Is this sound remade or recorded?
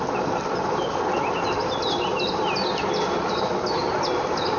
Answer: recorded